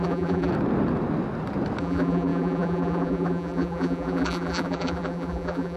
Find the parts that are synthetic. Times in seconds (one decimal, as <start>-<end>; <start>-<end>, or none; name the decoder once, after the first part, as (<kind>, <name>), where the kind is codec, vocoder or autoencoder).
0.0-0.5 (vocoder, BigVGAN v2); 1.8-5.8